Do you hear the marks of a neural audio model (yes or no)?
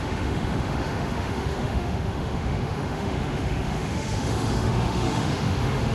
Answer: yes